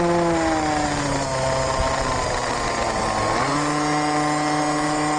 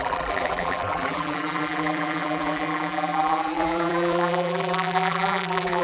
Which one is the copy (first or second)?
second